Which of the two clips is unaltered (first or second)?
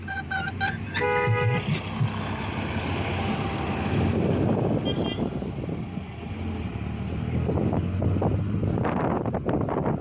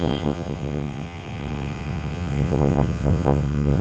first